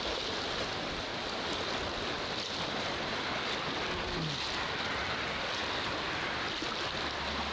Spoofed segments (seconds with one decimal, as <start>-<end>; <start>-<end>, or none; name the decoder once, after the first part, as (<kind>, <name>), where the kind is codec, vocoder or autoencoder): none